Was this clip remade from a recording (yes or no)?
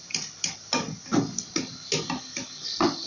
no